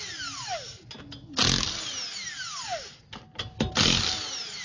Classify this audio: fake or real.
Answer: real